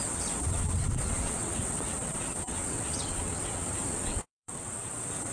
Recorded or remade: remade